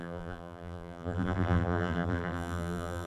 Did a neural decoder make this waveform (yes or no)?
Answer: yes